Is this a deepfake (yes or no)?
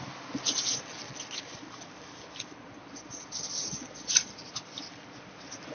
yes